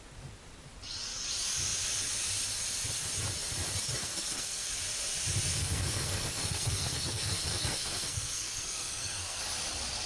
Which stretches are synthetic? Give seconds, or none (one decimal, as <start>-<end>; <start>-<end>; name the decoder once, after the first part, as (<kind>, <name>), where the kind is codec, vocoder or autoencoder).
4.0-4.7 (codec, SNAC); 5.5-9.4